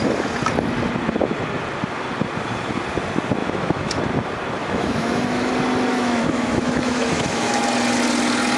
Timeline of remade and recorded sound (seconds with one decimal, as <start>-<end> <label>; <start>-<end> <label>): 0.0-3.4 recorded; 3.4-4.0 remade; 4.0-4.6 recorded; 4.6-5.5 remade; 5.5-5.9 recorded; 5.9-7.6 remade; 7.6-8.6 recorded